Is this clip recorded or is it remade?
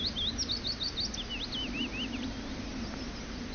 recorded